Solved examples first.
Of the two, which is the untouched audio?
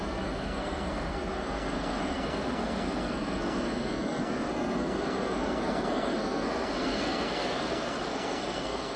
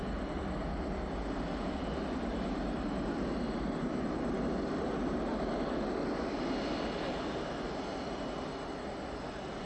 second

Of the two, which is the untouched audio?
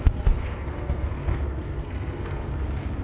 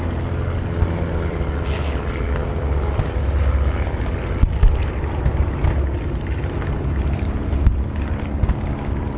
second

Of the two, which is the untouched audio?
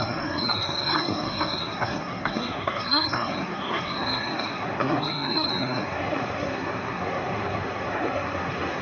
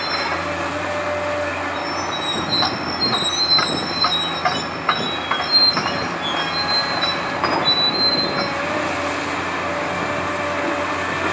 second